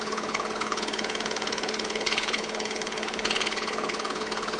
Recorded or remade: remade